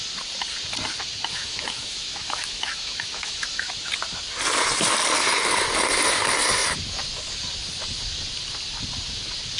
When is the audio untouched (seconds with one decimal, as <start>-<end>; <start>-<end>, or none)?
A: 0.0-1.3; 3.7-9.6